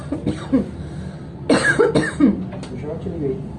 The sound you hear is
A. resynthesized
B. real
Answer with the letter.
B